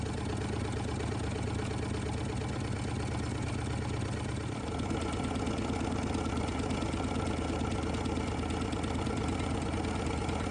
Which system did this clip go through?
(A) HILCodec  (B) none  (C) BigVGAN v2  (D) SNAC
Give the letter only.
B